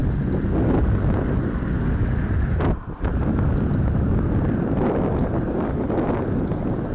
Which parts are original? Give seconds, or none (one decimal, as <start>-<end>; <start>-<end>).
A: 0.0-6.9